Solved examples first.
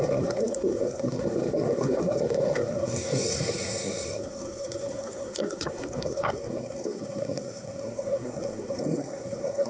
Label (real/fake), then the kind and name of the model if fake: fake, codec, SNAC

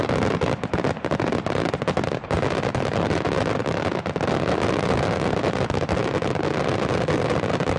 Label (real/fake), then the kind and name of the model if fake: real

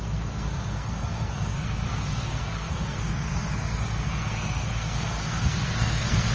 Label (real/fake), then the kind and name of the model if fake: fake, codec, SNAC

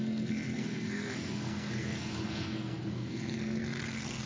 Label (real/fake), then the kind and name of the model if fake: fake, codec, SNAC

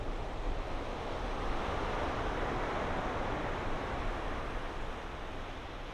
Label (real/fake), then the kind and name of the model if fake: real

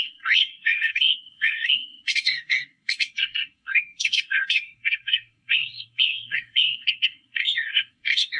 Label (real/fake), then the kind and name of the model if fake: fake, codec, SNAC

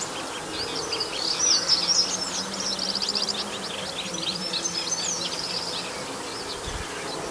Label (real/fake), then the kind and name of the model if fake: real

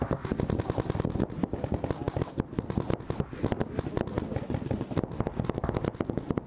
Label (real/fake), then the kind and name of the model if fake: real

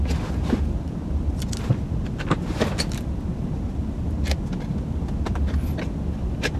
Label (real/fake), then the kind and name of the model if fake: real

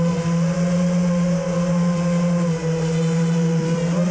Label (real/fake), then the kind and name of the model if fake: real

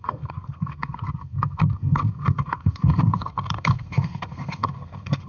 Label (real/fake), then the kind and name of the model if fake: fake, codec, SNAC